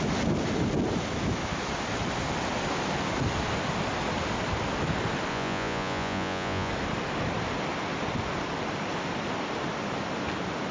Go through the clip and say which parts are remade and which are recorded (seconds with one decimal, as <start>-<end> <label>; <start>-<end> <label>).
0.0-5.3 recorded; 5.3-6.7 remade; 6.7-10.7 recorded